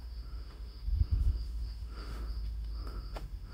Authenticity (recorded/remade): remade